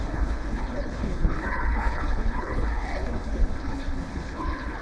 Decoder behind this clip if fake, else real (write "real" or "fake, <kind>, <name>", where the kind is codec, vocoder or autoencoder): fake, codec, HILCodec